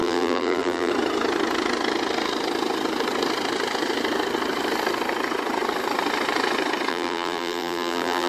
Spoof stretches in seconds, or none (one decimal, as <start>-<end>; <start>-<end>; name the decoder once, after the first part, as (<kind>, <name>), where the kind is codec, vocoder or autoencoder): 0.0-0.9 (vocoder, BigVGAN v2); 6.9-8.3